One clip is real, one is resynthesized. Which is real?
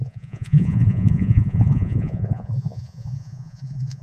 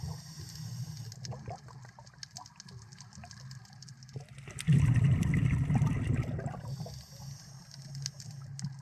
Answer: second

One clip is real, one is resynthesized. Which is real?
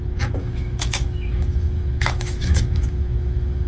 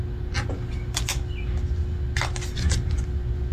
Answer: second